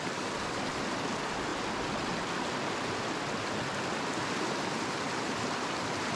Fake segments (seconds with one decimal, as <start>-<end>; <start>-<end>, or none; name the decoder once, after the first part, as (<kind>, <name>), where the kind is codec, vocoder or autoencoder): none